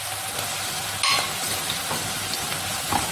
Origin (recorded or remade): recorded